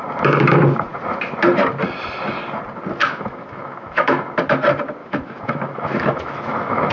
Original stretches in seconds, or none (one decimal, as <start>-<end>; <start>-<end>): 0.0-3.0; 4.1-5.0